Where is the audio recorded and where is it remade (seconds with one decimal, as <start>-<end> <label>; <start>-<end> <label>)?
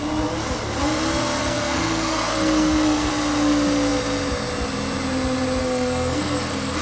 0.0-1.4 recorded; 1.4-3.1 remade; 3.1-5.6 recorded; 5.6-6.8 remade